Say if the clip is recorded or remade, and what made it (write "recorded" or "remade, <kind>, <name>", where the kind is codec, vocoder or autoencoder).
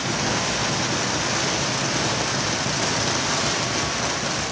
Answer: recorded